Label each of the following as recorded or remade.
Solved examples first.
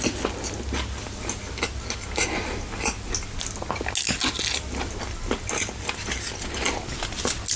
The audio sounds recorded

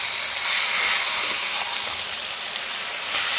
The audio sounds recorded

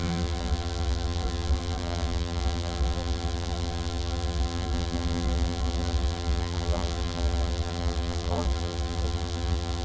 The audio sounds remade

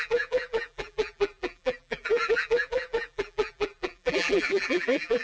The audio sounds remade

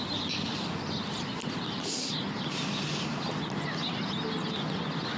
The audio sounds recorded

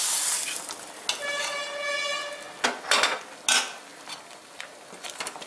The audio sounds recorded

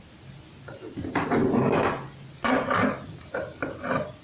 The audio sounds recorded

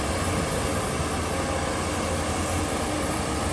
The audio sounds recorded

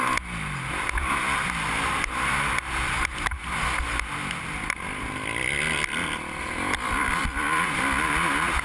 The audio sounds recorded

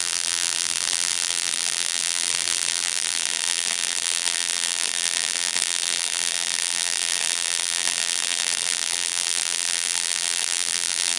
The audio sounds remade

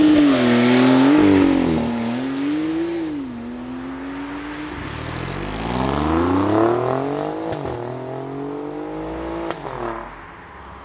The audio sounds recorded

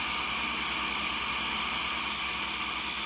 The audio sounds recorded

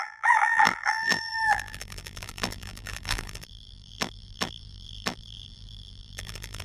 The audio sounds remade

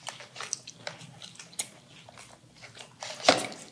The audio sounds recorded